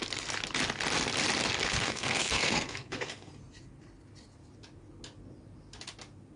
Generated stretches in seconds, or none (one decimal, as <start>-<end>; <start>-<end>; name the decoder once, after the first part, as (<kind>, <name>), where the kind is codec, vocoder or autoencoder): 1.6-3.3 (codec, SNAC)